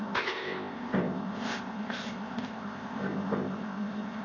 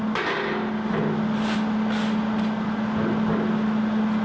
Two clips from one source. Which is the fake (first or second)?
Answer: first